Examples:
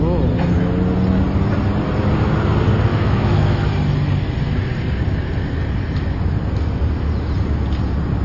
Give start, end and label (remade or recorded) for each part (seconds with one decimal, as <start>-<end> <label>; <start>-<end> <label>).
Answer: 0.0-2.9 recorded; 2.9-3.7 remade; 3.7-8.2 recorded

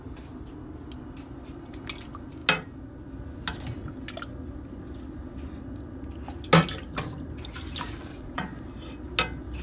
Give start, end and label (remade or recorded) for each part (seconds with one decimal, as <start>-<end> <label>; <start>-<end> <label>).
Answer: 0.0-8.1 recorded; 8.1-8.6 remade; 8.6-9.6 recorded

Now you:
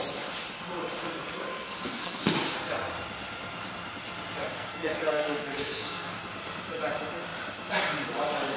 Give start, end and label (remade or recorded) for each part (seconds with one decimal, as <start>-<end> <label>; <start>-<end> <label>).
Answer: 0.0-1.0 recorded; 1.0-2.2 remade; 2.2-4.4 recorded; 4.4-6.2 remade; 6.2-8.6 recorded